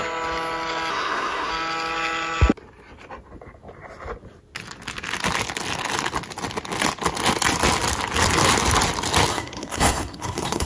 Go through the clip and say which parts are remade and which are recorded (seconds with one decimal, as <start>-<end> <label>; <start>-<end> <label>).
0.0-0.9 recorded; 0.9-1.5 remade; 1.5-9.3 recorded; 9.3-10.7 remade

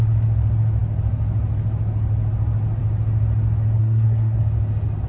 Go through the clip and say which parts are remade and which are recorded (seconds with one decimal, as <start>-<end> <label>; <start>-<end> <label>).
0.0-3.8 recorded; 3.8-4.4 remade; 4.4-5.1 recorded

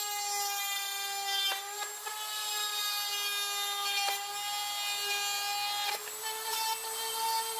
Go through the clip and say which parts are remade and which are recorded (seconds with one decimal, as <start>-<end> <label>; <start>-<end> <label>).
0.0-7.6 recorded